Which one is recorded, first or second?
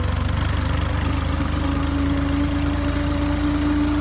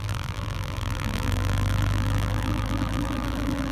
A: first